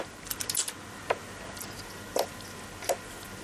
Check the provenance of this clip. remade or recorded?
recorded